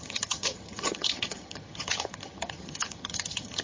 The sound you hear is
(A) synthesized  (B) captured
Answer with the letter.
A